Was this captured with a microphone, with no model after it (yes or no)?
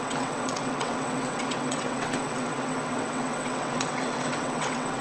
no